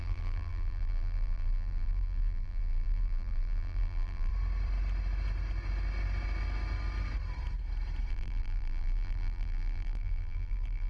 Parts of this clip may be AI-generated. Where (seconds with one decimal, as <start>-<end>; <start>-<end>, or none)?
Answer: 0.0-4.3; 8.1-10.9

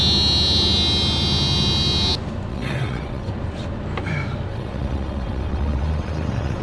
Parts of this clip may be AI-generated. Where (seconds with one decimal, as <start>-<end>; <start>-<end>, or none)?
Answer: 2.5-3.3; 4.5-6.6

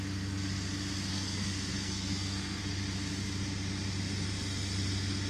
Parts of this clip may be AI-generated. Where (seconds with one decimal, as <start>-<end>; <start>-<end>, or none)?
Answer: 1.1-2.6

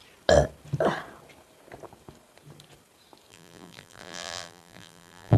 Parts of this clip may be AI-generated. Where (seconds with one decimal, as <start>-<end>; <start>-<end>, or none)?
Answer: 3.3-5.4

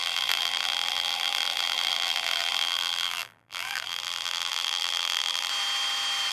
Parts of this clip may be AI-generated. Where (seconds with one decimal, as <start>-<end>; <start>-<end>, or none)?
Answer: 0.0-5.5